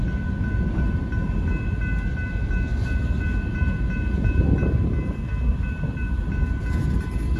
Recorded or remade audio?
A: recorded